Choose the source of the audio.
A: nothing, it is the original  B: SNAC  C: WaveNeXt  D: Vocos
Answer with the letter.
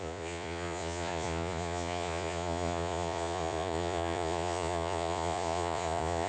D